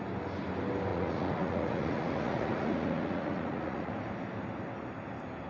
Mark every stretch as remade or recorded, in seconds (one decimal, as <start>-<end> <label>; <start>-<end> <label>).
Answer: 0.0-0.9 recorded; 0.9-3.9 remade; 3.9-5.5 recorded